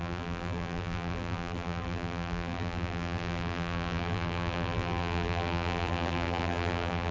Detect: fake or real fake